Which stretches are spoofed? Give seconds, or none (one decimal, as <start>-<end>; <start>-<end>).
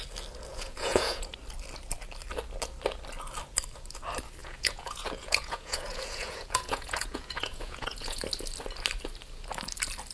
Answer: 0.5-1.3; 4.4-8.2